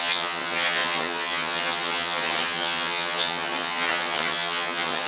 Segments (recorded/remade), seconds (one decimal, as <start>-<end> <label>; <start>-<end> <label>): 0.0-5.1 remade